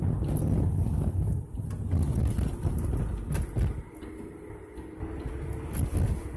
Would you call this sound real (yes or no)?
yes